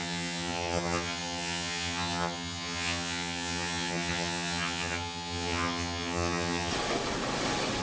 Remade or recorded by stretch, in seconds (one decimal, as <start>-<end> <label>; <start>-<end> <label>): 0.0-6.7 remade; 6.7-7.8 recorded